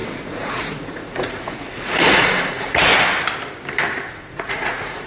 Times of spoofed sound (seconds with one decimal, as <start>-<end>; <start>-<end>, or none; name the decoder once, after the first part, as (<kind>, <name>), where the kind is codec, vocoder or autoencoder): 0.0-2.9 (vocoder, Vocos); 4.1-5.1